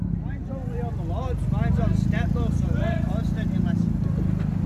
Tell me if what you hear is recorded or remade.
recorded